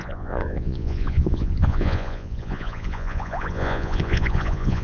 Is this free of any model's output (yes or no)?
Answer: no